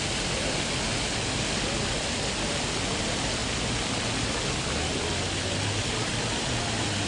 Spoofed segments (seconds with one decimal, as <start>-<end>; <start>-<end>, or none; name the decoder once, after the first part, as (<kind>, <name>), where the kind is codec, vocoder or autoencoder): none